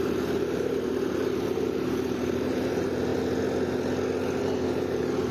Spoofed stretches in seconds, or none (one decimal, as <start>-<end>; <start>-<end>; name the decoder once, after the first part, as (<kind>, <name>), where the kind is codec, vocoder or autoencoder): 0.0-3.1 (vocoder, BigVGAN v2); 4.4-5.3